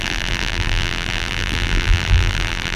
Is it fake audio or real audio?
fake